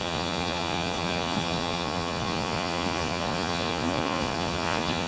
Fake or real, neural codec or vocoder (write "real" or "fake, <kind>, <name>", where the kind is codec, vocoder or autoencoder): fake, vocoder, Vocos